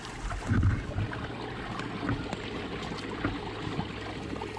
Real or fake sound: real